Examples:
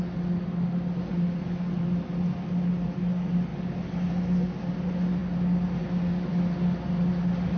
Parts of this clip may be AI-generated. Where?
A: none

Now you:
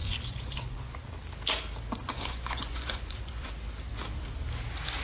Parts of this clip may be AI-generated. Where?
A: 0.0-1.0 (vocoder, Vocos); 2.0-3.5

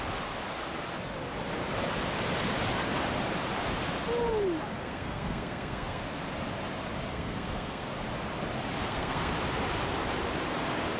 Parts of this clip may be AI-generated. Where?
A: 4.8-6.0 (codec, SNAC); 7.1-7.9; 8.8-9.3

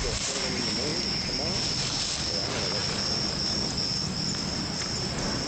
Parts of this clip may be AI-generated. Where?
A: none

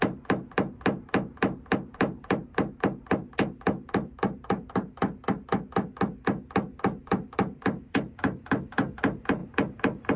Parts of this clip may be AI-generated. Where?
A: 0.0-5.0 (vocoder, BigVGAN v2); 7.0-10.2

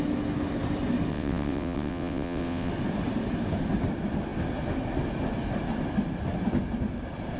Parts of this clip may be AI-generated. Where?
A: 1.1-2.7 (vocoder, WaveNeXt)

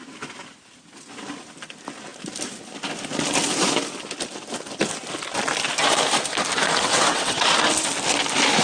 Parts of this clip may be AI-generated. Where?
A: 6.9-7.4 (vocoder, WaveNeXt)

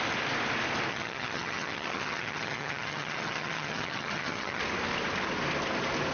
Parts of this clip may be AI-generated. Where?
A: 0.9-4.6 (vocoder, HiFi-GAN)